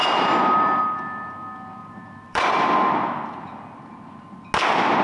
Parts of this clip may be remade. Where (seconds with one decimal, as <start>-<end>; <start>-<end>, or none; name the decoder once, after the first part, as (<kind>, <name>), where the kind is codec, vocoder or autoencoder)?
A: 0.0-0.8 (vocoder, BigVGAN v2); 1.8-2.6